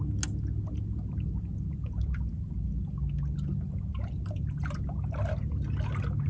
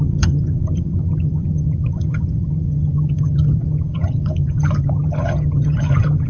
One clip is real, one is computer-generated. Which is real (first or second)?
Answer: first